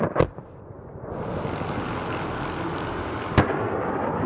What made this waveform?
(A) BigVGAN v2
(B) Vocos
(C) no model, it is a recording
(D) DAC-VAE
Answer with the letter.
C